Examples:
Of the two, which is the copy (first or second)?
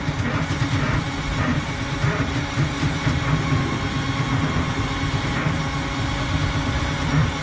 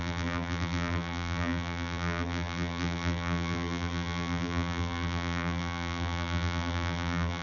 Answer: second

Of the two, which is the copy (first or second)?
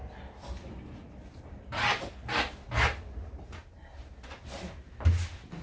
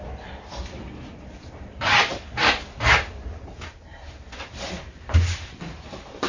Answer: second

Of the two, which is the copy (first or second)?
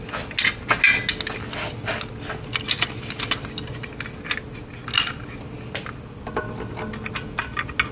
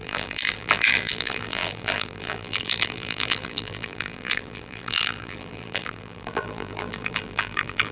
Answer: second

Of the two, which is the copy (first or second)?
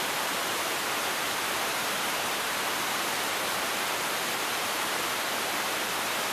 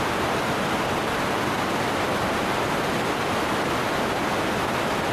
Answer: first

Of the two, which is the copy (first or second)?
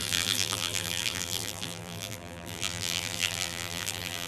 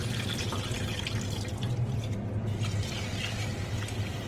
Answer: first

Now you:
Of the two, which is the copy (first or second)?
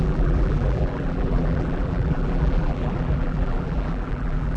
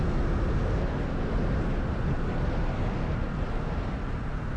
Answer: first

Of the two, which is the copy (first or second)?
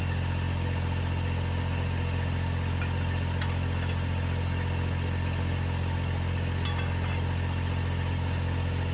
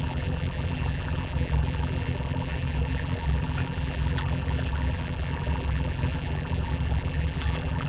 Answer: second